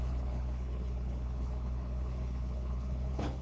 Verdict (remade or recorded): remade